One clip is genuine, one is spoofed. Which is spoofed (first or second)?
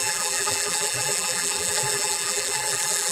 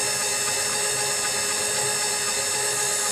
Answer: first